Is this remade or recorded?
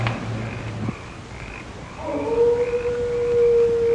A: recorded